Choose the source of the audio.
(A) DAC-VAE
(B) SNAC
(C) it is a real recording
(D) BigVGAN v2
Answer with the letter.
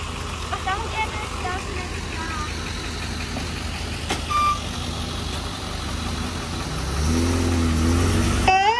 C